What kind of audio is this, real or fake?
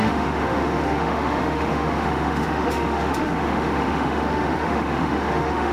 fake